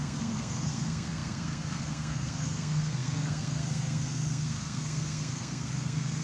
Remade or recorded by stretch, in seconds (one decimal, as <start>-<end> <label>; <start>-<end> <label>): 0.0-6.2 remade